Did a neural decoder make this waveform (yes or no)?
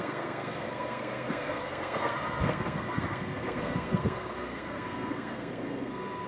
yes